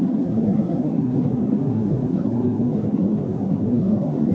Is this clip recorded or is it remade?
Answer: remade